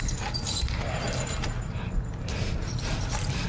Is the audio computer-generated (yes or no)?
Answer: no